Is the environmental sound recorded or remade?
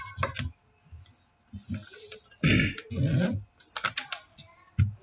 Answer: recorded